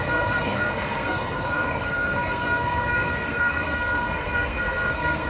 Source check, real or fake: fake